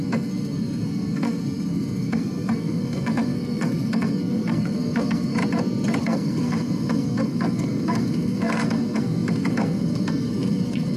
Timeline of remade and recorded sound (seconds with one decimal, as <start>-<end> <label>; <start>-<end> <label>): 0.0-5.4 remade; 5.4-6.0 recorded; 6.0-11.0 remade